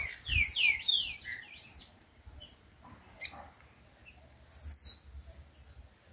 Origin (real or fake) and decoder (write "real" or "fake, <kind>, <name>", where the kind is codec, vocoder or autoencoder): real